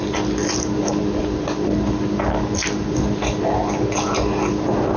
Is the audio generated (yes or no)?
no